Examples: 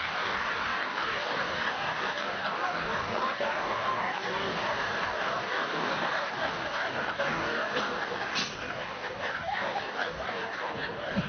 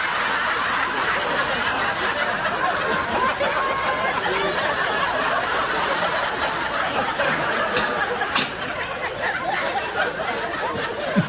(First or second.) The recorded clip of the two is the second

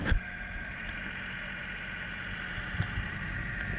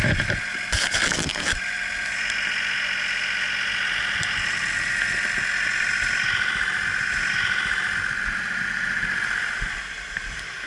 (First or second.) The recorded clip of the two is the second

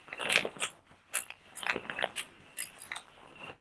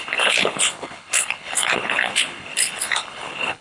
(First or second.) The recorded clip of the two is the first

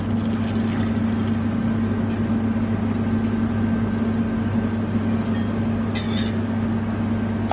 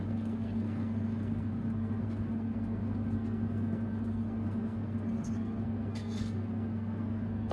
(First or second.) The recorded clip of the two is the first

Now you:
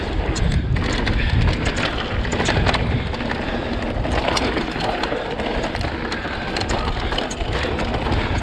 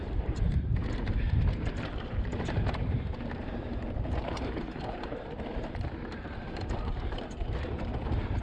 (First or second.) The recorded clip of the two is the first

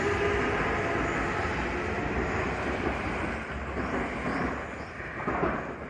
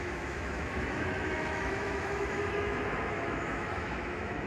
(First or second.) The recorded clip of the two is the first